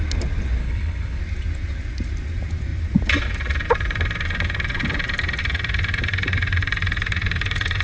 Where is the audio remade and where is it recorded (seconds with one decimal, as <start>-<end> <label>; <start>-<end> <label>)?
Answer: 0.0-0.6 recorded; 0.6-1.2 remade; 1.2-7.8 recorded